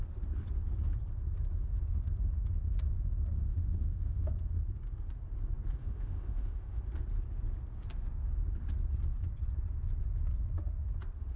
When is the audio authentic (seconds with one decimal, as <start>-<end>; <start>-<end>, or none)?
0.0-3.4; 4.3-5.8; 6.8-11.4